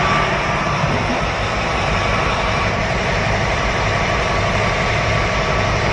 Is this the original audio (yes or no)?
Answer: no